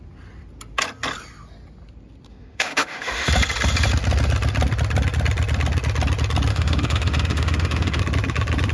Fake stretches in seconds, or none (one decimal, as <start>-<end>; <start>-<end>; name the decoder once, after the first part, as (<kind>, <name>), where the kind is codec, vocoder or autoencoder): 2.3-3.3 (autoencoder, DAC-VAE); 6.5-8.0